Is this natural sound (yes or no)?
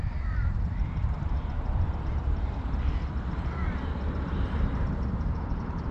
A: no